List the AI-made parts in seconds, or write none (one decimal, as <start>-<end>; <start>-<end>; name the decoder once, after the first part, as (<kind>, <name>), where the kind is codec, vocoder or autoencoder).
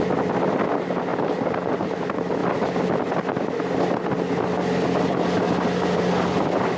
none